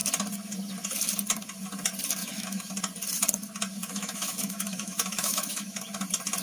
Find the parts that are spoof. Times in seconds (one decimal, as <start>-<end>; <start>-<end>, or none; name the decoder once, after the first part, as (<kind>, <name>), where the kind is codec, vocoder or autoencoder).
2.2-2.7 (autoencoder, DAC-VAE); 3.8-5.8